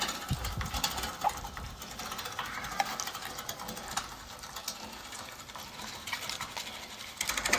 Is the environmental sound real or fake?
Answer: real